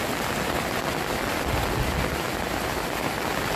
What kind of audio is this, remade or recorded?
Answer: recorded